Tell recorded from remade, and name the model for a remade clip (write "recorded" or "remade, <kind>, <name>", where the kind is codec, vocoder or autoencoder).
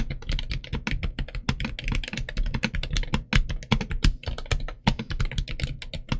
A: recorded